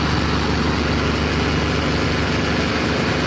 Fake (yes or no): no